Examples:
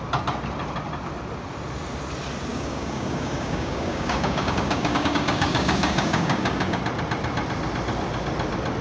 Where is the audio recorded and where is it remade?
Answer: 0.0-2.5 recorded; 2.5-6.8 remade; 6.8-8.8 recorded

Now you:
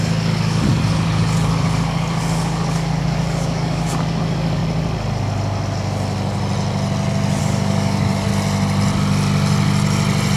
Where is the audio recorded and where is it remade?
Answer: 0.0-4.6 remade; 4.6-7.4 recorded; 7.4-8.3 remade; 8.3-10.4 recorded

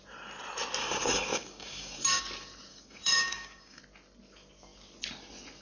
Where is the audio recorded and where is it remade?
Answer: 0.0-0.8 recorded; 0.8-2.2 remade; 2.2-2.7 recorded; 2.7-3.8 remade; 3.8-5.6 recorded